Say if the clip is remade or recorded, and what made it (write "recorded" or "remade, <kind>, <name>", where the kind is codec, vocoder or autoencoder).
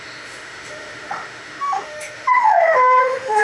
remade, autoencoder, DAC-VAE